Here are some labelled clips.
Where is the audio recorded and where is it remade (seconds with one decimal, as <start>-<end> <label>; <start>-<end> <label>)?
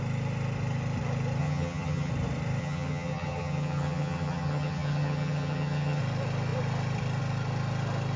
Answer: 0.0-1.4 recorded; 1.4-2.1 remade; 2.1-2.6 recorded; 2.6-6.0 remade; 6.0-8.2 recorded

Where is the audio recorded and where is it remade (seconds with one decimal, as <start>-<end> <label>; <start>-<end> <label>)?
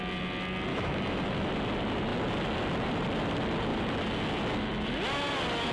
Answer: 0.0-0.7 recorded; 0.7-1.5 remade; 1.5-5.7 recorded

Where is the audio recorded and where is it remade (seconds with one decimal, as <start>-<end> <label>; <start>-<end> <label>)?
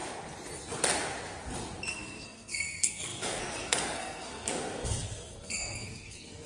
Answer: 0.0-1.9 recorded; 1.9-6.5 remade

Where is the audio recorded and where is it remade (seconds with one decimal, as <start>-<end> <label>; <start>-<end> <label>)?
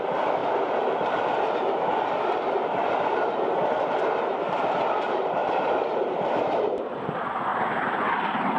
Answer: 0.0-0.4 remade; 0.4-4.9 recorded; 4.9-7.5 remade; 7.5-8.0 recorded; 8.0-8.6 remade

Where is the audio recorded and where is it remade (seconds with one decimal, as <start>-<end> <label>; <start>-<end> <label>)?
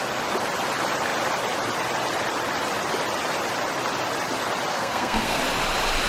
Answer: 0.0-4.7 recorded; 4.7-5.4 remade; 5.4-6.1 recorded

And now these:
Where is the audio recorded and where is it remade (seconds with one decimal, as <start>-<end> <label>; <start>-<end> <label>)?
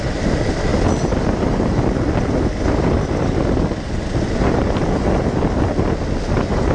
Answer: 0.0-6.7 recorded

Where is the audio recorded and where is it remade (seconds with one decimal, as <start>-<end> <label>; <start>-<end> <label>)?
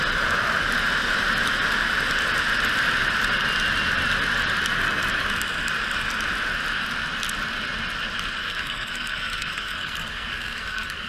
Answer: 0.0-8.4 recorded; 8.4-11.1 remade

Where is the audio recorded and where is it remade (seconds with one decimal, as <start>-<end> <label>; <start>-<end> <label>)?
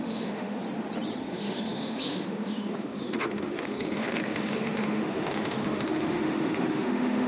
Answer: 0.0-0.6 remade; 0.6-1.2 recorded; 1.2-7.3 remade